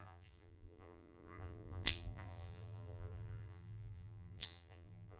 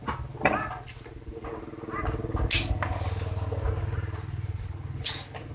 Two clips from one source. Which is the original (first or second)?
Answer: second